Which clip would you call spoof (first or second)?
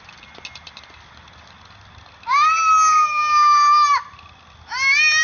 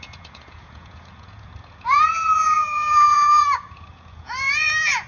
second